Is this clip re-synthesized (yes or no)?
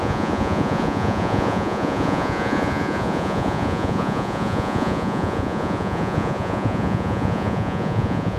yes